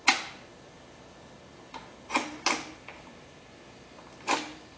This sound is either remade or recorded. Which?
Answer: recorded